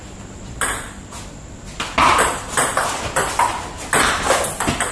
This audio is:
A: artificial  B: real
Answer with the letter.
B